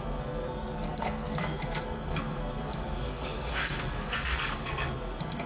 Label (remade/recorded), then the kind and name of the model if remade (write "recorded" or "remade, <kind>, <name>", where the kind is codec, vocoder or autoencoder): remade, codec, SNAC